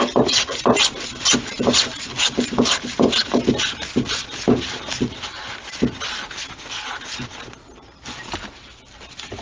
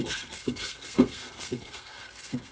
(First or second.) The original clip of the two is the first